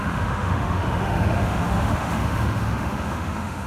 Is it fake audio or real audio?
fake